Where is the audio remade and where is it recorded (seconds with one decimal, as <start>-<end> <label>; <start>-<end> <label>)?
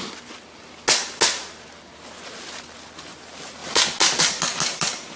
0.0-5.2 recorded